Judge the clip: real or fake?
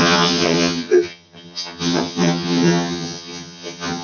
fake